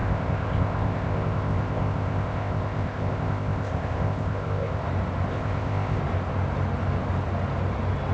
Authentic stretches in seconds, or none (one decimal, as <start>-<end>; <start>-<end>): 4.8-5.3; 6.0-8.1